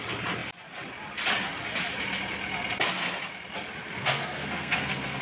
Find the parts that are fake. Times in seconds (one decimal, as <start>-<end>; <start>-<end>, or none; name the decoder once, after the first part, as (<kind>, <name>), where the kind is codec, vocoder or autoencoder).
4.0-5.2 (codec, SNAC)